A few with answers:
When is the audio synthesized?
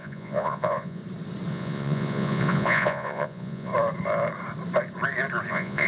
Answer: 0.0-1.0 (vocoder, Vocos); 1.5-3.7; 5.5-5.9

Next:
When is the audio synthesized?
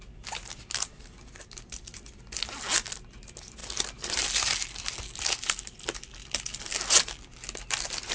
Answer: none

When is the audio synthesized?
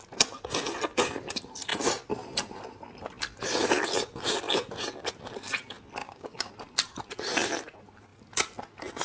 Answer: 6.0-6.5 (codec, DAC)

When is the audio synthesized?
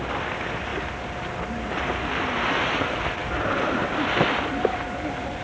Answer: none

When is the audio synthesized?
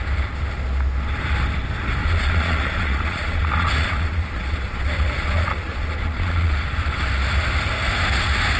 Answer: 2.0-6.6 (vocoder, Vocos)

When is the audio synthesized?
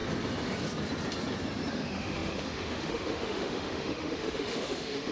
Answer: 1.7-5.1 (autoencoder, DAC-VAE)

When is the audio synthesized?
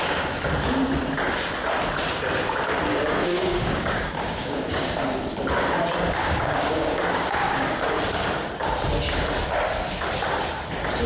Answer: 2.9-4.9 (codec, DAC); 6.2-7.8